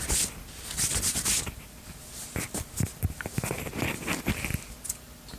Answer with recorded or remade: recorded